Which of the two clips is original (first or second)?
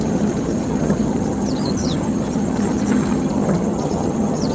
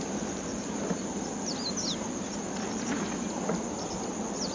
second